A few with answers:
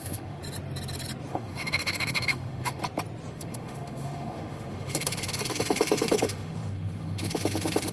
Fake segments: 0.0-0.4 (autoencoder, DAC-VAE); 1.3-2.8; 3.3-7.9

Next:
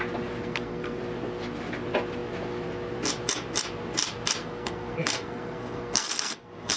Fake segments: 0.4-1.0 (codec, SNAC); 4.4-6.8

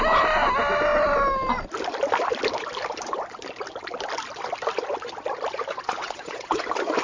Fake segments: 6.0-6.6 (vocoder, WaveNeXt)

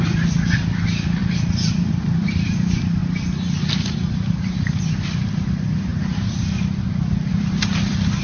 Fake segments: 0.0-3.0 (vocoder, BigVGAN v2); 3.8-5.9; 7.3-8.2

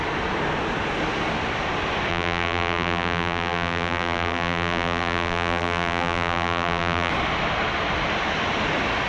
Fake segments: 2.1-7.1 (vocoder, BigVGAN v2)

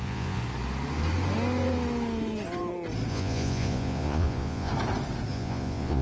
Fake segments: 0.0-0.4 (vocoder, Vocos); 3.1-4.7; 5.3-6.0